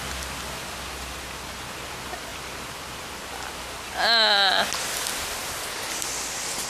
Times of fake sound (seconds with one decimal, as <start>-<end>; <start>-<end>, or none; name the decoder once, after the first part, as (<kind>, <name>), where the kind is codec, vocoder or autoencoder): none